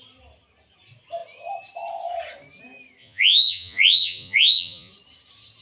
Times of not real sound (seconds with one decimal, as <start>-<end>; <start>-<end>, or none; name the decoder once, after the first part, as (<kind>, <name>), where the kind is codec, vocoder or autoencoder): 3.0-4.9 (vocoder, Vocos)